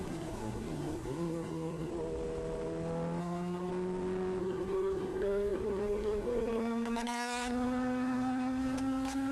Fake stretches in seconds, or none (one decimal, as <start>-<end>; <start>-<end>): 0.0-1.9; 3.2-3.7; 4.4-9.3